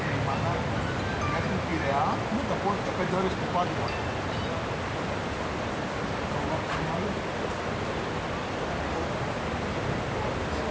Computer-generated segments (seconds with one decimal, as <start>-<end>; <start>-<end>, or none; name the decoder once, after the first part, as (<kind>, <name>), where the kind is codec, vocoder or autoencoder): none